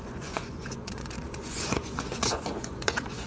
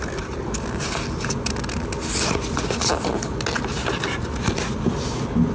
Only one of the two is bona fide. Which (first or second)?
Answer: second